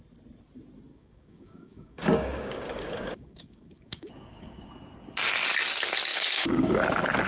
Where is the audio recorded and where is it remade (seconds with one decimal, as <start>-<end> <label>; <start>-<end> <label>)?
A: 0.0-0.9 recorded; 0.9-4.7 remade; 4.7-6.1 recorded; 6.1-6.8 remade; 6.8-7.3 recorded